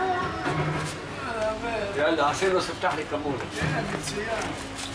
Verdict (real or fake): real